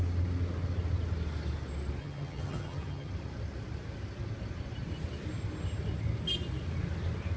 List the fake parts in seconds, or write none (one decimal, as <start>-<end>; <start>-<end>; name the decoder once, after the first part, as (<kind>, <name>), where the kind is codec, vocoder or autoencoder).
2.0-3.1 (vocoder, HiFi-GAN)